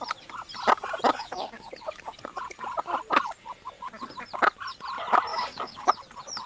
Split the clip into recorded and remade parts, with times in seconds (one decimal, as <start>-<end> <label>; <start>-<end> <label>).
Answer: 0.0-1.1 recorded; 1.1-1.7 remade; 1.7-5.3 recorded; 5.3-5.9 remade; 5.9-6.5 recorded